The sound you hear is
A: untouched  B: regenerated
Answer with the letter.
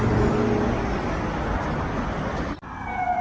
A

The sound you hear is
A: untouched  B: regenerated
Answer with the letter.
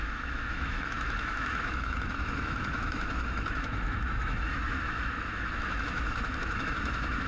B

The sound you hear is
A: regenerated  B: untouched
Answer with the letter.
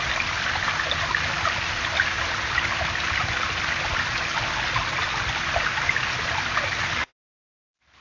B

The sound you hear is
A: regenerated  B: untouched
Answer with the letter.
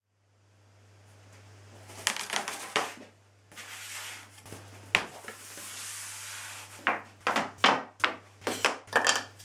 B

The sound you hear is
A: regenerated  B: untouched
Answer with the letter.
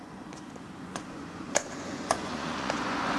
A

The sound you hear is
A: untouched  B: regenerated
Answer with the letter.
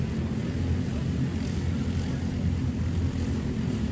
A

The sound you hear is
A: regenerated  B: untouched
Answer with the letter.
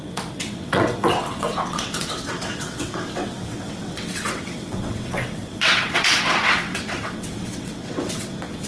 A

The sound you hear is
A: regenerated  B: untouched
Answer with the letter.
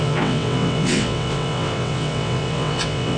A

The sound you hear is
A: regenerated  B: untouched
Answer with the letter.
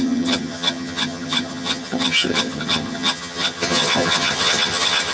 A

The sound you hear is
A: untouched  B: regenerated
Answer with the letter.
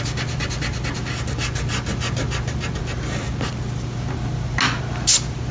A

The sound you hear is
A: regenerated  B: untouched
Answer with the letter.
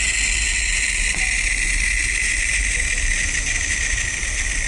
B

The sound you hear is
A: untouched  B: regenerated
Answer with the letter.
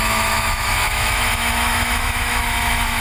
B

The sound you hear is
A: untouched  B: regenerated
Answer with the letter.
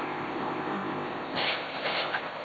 B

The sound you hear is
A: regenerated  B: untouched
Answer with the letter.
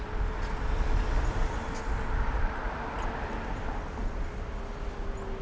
B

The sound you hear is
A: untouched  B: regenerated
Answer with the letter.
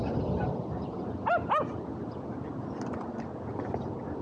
A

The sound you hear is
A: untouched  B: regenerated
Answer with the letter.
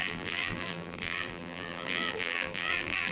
B